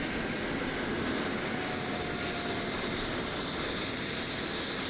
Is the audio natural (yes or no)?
yes